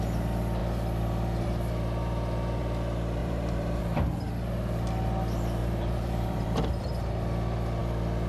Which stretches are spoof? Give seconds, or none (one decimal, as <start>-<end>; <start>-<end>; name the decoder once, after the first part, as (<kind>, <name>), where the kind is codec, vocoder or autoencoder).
3.2-3.8 (vocoder, BigVGAN v2); 5.6-6.8